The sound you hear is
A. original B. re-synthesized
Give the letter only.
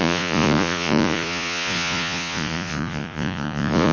B